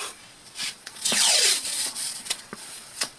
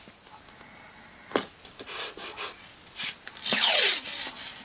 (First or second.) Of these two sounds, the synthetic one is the first